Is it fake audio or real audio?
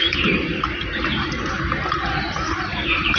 fake